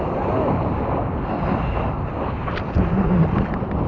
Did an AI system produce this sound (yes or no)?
no